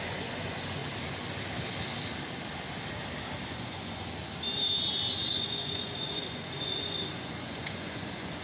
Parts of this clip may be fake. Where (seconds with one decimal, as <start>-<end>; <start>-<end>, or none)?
0.0-0.8; 3.5-4.2; 5.3-8.4